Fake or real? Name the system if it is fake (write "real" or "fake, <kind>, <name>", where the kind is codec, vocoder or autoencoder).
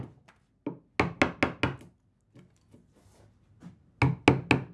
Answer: real